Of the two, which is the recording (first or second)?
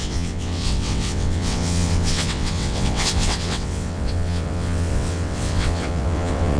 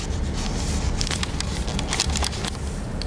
second